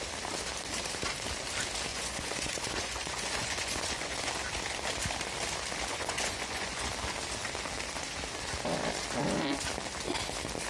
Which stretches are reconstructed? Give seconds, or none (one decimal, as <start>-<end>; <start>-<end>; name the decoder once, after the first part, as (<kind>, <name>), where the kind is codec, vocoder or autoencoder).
1.9-4.3 (vocoder, Vocos); 5.9-6.9